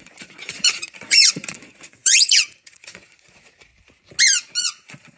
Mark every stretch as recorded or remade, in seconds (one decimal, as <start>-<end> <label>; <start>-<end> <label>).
0.0-3.7 remade; 3.7-4.6 recorded; 4.6-5.2 remade